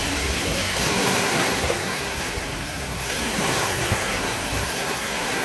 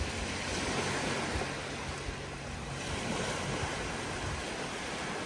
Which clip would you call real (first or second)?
second